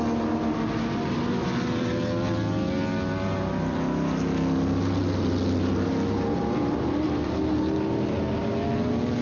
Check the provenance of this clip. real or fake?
real